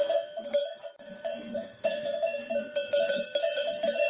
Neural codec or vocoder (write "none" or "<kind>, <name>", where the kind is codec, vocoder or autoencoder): autoencoder, DAC-VAE